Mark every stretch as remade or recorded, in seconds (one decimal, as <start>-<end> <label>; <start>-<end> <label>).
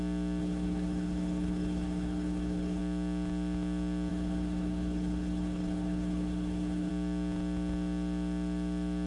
0.0-0.4 recorded; 0.4-2.8 remade; 2.8-4.1 recorded; 4.1-6.9 remade; 6.9-9.1 recorded